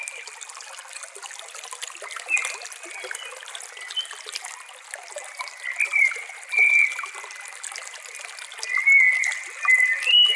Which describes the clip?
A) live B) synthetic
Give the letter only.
A